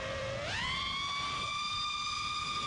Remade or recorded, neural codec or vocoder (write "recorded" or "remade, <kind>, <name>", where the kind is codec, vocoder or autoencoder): recorded